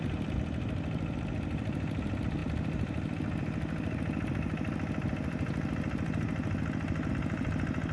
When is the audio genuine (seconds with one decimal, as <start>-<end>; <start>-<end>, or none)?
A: 0.0-7.9